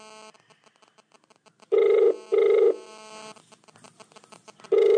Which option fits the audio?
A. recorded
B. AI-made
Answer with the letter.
A